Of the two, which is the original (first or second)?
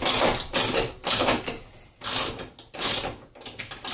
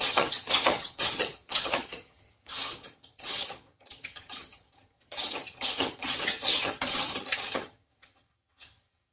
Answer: first